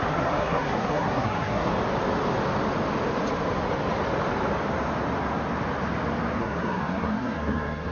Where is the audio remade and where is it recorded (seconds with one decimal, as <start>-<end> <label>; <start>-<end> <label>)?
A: 0.0-1.7 remade; 1.7-6.4 recorded; 6.4-7.9 remade